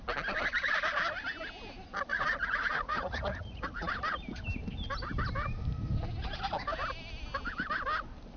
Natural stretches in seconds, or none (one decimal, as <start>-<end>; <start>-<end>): 0.0-2.1; 3.9-8.4